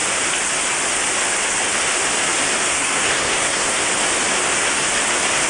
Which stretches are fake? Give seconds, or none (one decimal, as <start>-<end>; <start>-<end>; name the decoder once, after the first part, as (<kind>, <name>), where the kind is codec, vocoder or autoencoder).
2.7-3.8 (codec, SNAC)